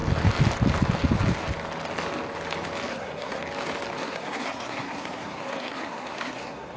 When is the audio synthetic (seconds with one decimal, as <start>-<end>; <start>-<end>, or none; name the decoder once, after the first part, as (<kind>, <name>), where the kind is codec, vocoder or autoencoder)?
2.9-3.4 (codec, SNAC); 4.0-6.8